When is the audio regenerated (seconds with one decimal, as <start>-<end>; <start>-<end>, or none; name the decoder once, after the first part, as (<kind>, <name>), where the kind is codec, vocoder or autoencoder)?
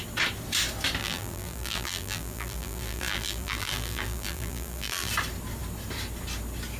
1.0-5.1 (vocoder, BigVGAN v2)